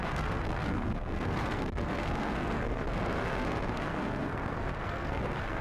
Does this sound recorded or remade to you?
remade